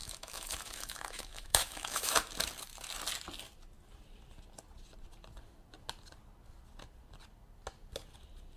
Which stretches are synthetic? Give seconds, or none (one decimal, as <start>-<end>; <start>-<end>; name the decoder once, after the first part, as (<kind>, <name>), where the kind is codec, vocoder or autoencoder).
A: 0.0-2.3 (autoencoder, DAC-VAE)